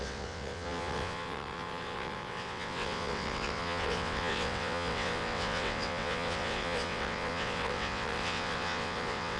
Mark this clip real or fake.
fake